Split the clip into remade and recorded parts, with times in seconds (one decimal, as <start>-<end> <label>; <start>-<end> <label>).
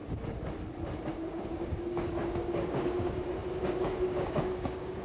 0.0-1.1 recorded; 1.1-5.0 remade